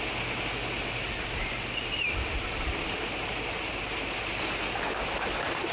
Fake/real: real